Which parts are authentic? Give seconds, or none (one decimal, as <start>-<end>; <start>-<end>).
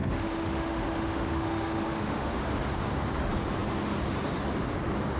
2.4-5.2